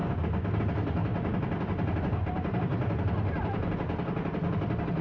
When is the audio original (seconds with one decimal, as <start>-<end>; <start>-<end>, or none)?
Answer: 0.0-5.0